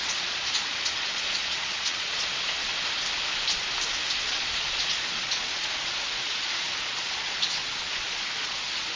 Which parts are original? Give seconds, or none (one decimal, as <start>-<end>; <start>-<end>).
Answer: 2.7-4.2